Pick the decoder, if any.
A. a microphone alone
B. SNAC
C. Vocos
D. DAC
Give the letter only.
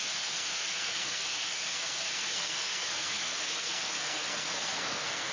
B